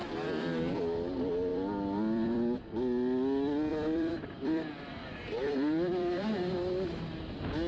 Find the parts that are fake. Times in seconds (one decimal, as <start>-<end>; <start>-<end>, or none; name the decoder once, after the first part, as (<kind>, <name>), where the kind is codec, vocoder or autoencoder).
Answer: 0.0-0.7 (vocoder, BigVGAN v2); 1.5-2.7; 3.7-6.5